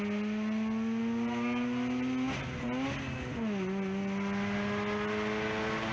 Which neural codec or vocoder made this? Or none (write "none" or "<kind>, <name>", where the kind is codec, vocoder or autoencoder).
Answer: none